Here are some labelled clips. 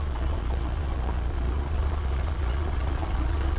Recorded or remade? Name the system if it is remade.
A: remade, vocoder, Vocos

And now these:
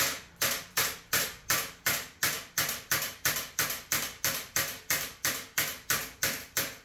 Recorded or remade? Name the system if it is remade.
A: remade, vocoder, BigVGAN v2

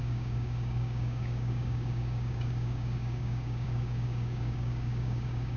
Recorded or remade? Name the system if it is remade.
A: remade, codec, DAC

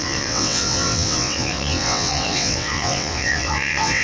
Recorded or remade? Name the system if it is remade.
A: remade, vocoder, WaveNeXt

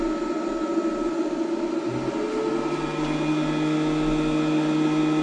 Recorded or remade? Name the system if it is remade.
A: recorded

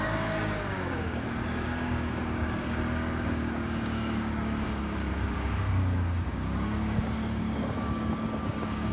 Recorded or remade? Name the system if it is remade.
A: remade, codec, DAC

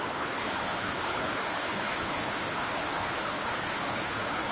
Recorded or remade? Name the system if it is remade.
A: remade, codec, HILCodec